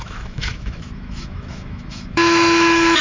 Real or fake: fake